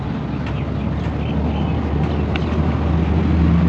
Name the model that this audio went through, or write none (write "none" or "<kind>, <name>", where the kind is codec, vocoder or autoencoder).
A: none